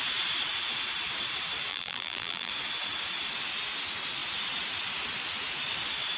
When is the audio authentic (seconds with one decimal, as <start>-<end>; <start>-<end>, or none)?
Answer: 0.0-1.7; 2.5-6.2